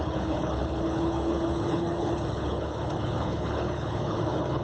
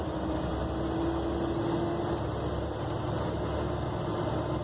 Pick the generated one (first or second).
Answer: first